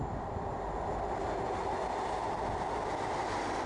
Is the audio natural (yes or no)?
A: yes